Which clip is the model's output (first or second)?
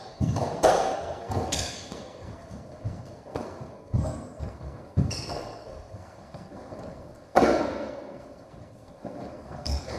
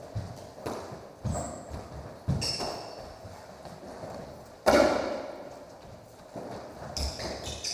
first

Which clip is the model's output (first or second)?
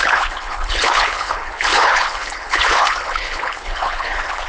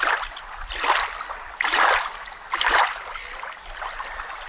first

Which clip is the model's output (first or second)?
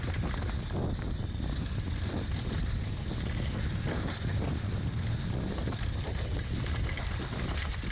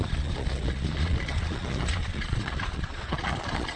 second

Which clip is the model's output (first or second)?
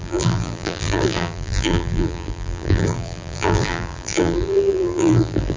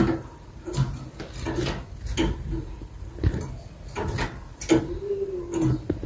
first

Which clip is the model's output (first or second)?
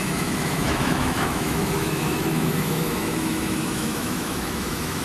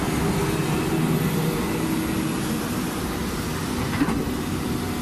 first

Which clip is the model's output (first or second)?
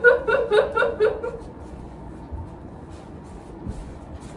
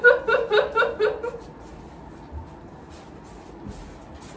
first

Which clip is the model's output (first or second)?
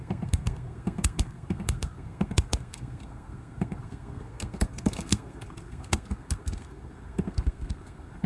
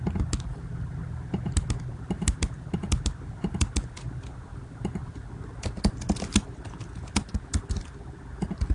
first